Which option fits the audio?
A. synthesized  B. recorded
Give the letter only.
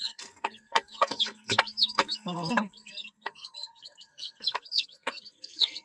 A